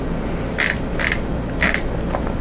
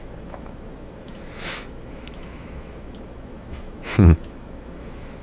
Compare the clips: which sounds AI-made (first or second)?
second